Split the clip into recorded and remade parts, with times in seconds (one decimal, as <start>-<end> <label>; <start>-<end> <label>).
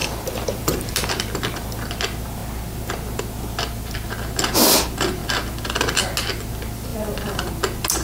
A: 0.0-1.9 remade; 1.9-6.9 recorded; 6.9-7.5 remade; 7.5-8.0 recorded